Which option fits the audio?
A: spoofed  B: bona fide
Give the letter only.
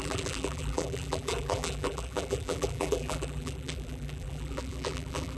A